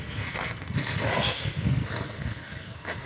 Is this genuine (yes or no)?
no